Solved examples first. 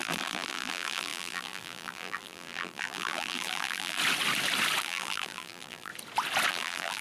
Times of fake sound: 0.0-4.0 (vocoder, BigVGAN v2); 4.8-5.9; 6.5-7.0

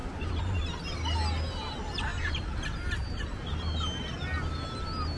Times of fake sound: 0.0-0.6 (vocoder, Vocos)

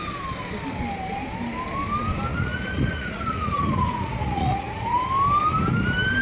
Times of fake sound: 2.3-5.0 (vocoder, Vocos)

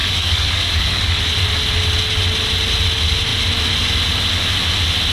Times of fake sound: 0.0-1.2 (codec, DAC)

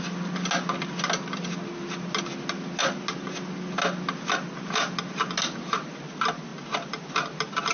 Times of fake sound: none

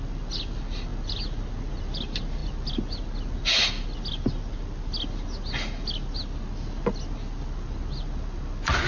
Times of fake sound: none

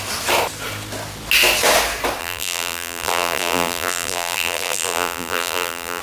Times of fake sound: 2.2-6.0 (vocoder, BigVGAN v2)